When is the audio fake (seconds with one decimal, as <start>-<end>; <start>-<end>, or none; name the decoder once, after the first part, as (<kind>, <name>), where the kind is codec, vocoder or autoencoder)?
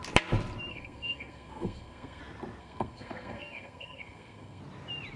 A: 0.7-2.2 (codec, SNAC); 2.6-4.6